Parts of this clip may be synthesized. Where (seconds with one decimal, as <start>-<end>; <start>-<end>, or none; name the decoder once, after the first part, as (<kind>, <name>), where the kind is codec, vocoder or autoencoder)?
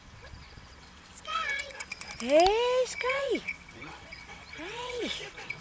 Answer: 0.0-1.9 (vocoder, WaveNeXt); 3.0-5.6